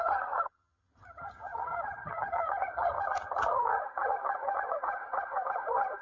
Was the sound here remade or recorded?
remade